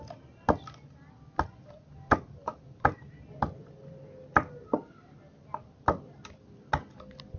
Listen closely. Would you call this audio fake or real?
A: real